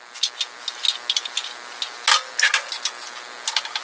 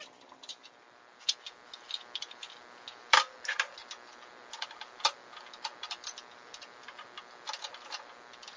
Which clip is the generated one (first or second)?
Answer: second